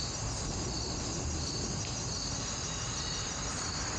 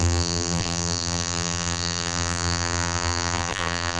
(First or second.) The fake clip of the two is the second